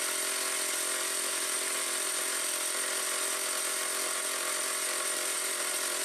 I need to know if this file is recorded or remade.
recorded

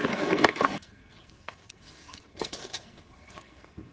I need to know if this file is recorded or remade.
remade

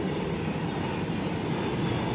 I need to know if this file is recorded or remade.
recorded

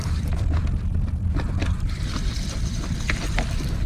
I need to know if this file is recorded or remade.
remade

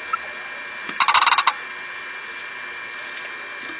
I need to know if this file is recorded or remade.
recorded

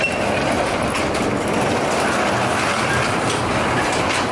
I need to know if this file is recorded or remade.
recorded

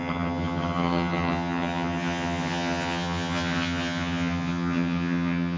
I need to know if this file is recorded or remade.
remade